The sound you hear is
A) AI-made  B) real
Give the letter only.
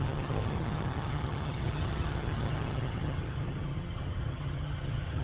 A